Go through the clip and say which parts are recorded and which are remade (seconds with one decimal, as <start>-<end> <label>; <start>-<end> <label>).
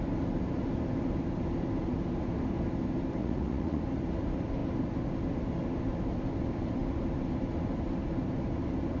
0.0-3.2 recorded; 3.2-3.8 remade; 3.8-9.0 recorded